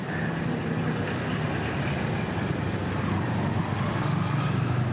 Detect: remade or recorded recorded